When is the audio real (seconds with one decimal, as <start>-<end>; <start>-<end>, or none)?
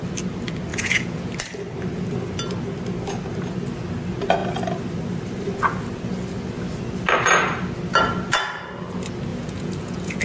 0.0-0.7; 1.3-9.3